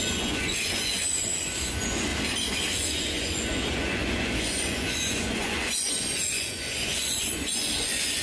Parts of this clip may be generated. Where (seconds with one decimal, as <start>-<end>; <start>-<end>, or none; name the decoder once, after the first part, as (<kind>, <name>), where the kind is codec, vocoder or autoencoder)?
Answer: 0.0-2.1 (vocoder, Vocos); 2.7-8.2

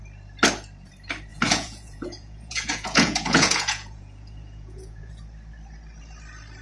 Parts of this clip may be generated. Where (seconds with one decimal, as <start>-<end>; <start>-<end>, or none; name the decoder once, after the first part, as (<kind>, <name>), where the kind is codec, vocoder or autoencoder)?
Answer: 1.3-5.1 (vocoder, Vocos)